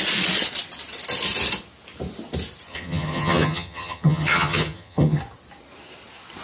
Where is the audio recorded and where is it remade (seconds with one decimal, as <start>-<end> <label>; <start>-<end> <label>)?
0.0-2.7 recorded; 2.7-5.2 remade; 5.2-6.4 recorded

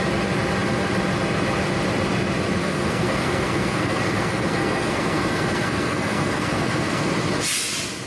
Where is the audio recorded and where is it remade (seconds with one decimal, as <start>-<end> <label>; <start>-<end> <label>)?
0.0-2.6 recorded; 2.6-7.1 remade; 7.1-8.1 recorded